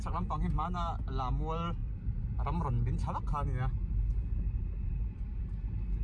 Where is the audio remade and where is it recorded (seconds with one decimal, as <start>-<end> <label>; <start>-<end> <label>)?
0.0-6.0 recorded